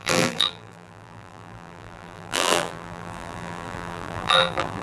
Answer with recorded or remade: remade